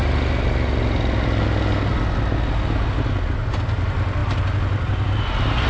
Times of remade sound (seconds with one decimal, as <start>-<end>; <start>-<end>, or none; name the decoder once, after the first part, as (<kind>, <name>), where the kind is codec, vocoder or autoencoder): none